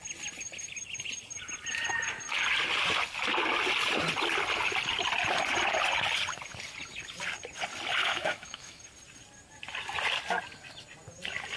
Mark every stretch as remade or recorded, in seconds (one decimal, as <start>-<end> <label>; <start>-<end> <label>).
0.0-8.0 recorded; 8.0-8.8 remade; 8.8-11.6 recorded